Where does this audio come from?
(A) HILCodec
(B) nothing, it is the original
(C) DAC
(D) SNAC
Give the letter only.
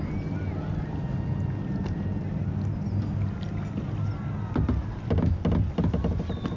B